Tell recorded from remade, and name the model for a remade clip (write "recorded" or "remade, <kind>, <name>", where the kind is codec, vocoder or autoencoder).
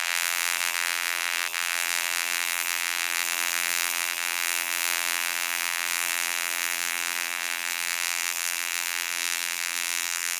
remade, vocoder, BigVGAN v2